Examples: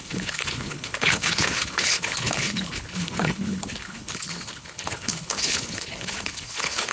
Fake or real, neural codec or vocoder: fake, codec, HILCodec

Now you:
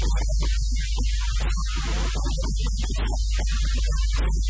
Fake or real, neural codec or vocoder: real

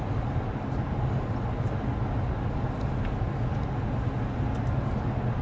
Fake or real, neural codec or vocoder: real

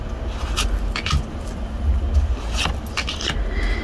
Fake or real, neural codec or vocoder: real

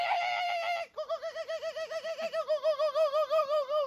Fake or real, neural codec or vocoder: real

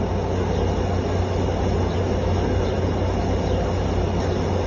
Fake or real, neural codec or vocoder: real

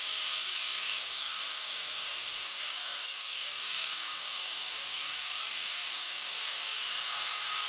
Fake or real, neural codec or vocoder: fake, codec, DAC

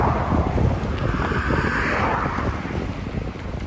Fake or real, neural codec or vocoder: real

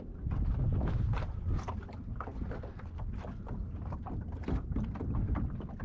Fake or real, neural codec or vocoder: fake, vocoder, BigVGAN v2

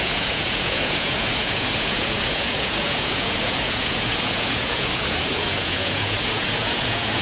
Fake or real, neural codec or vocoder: fake, vocoder, Vocos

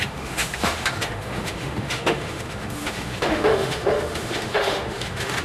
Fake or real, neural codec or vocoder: fake, autoencoder, DAC-VAE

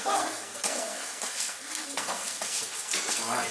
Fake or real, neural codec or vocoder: fake, codec, SNAC